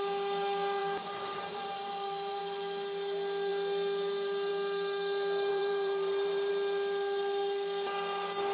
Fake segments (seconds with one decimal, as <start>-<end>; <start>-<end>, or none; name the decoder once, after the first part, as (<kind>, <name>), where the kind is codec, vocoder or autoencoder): 0.8-2.4 (vocoder, BigVGAN v2); 5.5-6.5